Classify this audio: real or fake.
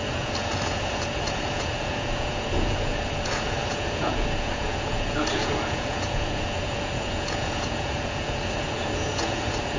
fake